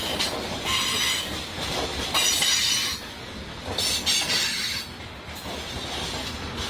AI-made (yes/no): no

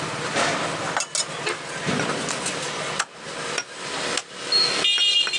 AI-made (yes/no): no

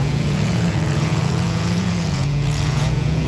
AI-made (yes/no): yes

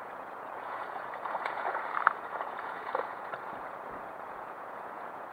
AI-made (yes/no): yes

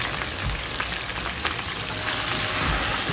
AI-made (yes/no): no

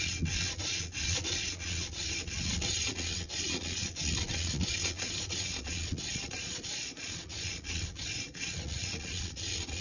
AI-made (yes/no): yes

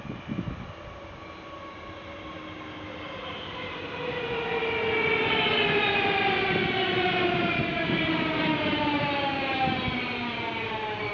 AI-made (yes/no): no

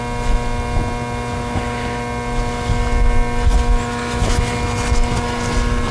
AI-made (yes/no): no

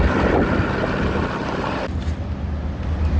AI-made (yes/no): no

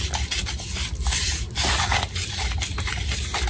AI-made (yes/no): no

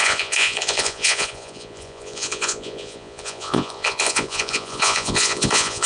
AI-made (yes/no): yes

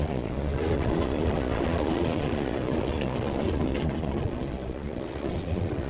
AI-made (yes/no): yes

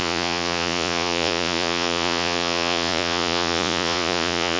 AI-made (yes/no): yes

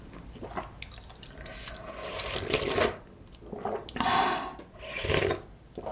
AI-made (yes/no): no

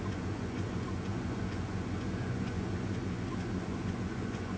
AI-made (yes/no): yes